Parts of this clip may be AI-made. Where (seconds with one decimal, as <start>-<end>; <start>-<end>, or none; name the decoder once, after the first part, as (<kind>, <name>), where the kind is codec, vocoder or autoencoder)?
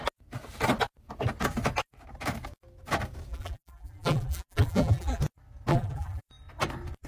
3.3-5.2 (vocoder, BigVGAN v2); 5.7-6.2